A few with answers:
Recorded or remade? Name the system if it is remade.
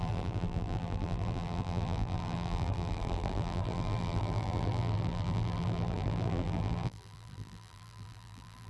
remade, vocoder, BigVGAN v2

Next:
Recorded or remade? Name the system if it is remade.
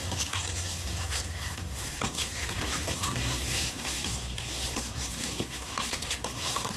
remade, codec, SNAC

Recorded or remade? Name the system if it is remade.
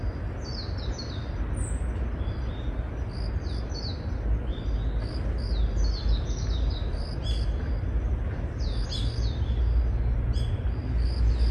recorded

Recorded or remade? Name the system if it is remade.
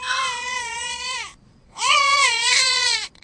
remade, vocoder, Vocos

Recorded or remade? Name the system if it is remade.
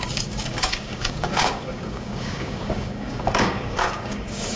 remade, codec, DAC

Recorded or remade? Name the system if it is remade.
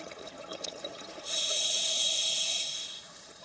remade, vocoder, Vocos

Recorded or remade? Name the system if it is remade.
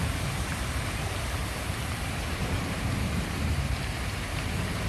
remade, vocoder, BigVGAN v2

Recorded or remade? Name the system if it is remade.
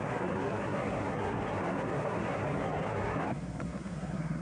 remade, codec, SNAC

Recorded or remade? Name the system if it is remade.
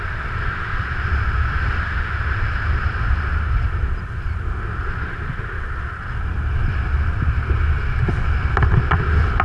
recorded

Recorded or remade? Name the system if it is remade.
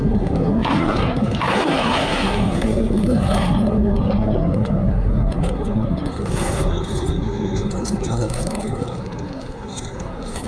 remade, codec, SNAC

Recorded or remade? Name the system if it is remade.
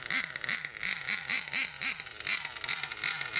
recorded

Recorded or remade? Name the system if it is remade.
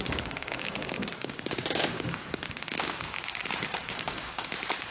remade, codec, DAC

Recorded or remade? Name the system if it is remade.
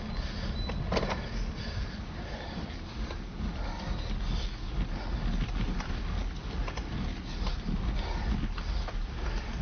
recorded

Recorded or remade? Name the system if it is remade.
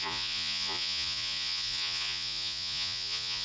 remade, vocoder, Vocos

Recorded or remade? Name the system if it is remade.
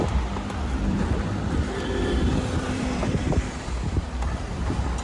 remade, vocoder, BigVGAN v2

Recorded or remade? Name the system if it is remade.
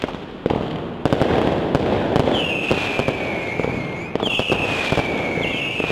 recorded